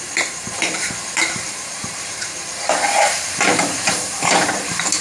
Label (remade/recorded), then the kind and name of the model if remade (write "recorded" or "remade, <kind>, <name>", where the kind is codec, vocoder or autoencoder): remade, vocoder, BigVGAN v2